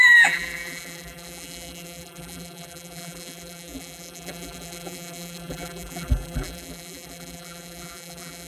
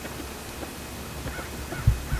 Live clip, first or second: second